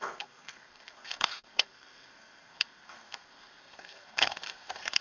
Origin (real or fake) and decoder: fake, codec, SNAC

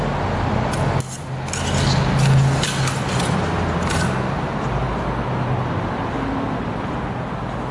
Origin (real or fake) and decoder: real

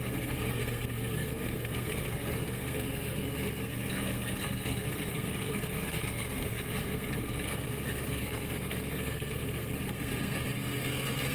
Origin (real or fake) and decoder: fake, codec, SNAC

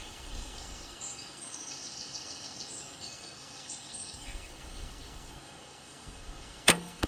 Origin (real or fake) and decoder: fake, codec, SNAC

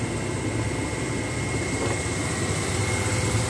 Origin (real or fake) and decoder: real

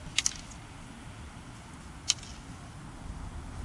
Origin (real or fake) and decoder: real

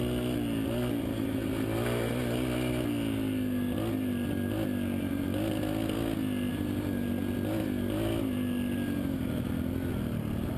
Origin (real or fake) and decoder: real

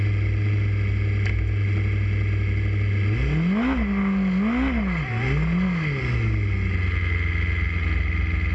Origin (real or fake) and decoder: real